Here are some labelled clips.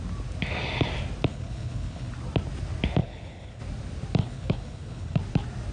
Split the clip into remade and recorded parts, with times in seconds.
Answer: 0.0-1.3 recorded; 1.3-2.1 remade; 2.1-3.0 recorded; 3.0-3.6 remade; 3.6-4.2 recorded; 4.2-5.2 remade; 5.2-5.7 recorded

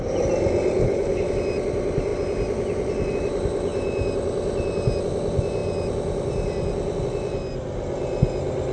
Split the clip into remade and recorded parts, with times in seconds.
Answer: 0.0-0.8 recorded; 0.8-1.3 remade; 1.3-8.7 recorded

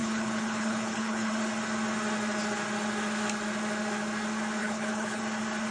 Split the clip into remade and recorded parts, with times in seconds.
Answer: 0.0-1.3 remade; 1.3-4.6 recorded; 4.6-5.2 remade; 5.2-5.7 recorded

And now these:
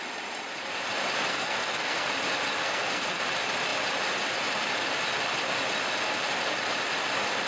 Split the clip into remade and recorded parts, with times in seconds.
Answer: 0.0-1.3 recorded; 1.3-2.1 remade; 2.1-2.6 recorded; 2.6-3.2 remade; 3.2-7.5 recorded